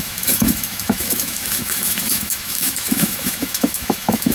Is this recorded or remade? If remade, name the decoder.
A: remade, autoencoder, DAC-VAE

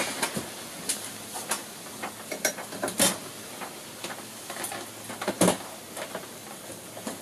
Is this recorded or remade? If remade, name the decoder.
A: recorded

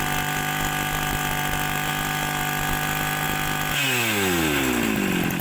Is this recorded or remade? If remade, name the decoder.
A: recorded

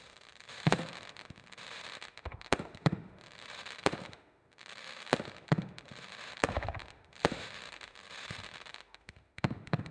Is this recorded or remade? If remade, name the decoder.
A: remade, autoencoder, DAC-VAE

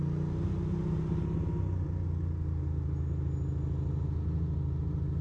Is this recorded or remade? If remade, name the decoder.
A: recorded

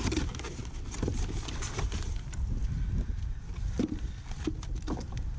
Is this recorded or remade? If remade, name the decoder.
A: recorded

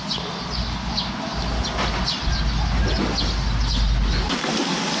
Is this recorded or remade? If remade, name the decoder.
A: recorded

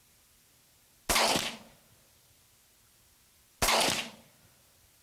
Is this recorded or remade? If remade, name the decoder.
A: recorded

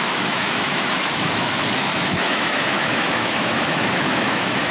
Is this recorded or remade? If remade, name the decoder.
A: remade, autoencoder, DAC-VAE